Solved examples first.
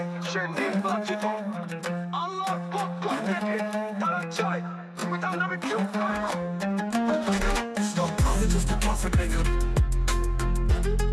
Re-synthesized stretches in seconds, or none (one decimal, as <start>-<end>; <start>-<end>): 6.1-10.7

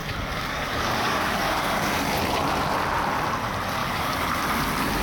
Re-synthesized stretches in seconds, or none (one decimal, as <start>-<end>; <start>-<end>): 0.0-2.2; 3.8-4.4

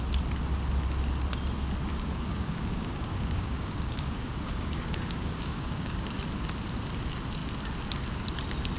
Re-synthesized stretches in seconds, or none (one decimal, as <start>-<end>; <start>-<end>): 1.9-6.1